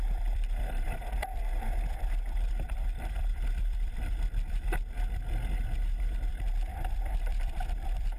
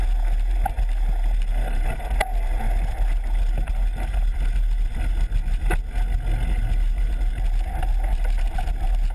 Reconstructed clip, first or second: first